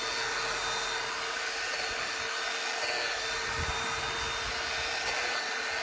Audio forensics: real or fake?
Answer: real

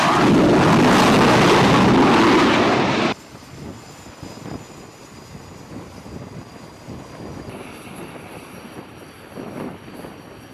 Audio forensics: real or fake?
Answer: real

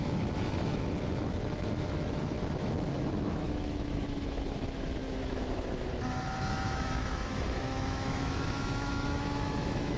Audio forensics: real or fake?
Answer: fake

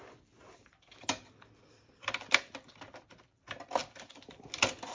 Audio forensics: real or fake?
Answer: real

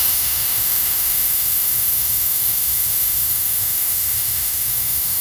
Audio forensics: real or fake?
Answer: fake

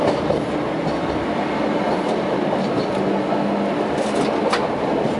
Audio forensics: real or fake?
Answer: real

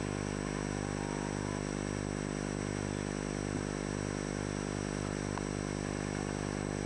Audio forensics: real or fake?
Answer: real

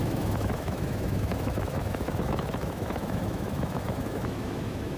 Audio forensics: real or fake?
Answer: fake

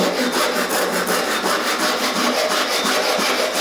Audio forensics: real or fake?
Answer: real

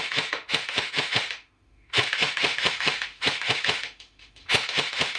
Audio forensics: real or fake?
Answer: fake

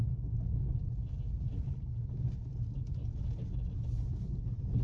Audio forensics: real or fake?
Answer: real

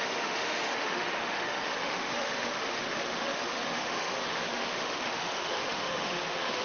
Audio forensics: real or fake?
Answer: fake